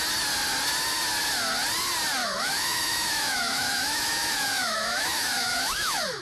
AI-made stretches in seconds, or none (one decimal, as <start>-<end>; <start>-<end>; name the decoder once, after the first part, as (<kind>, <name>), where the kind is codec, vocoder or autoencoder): 2.2-6.2 (autoencoder, DAC-VAE)